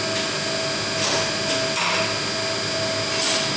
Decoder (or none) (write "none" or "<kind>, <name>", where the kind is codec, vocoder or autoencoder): none